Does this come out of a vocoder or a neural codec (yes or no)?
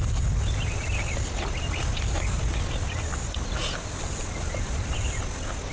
no